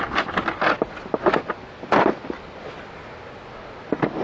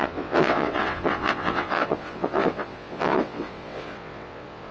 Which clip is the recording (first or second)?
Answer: first